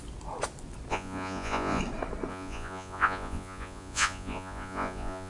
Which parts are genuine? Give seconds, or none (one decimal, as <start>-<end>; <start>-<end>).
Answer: 0.0-0.9; 1.8-2.3